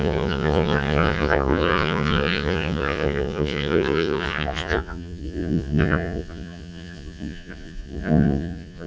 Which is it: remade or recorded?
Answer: remade